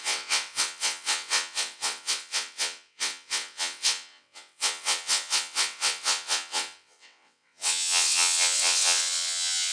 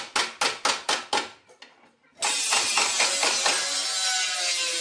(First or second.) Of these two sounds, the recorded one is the second